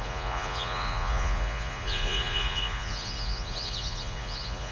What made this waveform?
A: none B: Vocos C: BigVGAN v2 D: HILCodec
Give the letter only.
B